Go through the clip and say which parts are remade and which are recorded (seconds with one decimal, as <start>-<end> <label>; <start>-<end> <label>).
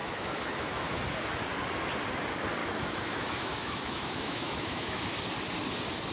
0.0-1.0 remade; 1.0-2.6 recorded; 2.6-5.0 remade; 5.0-6.1 recorded